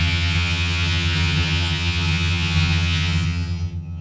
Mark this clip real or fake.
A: fake